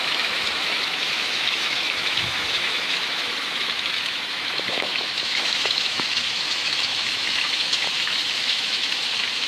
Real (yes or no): no